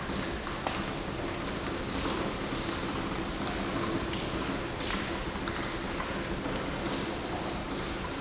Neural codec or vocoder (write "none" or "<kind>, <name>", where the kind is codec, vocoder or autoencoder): none